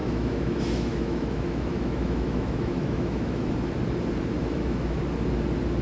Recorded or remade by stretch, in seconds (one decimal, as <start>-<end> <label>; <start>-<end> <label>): 0.0-3.5 remade; 3.5-4.4 recorded; 4.4-5.0 remade; 5.0-5.8 recorded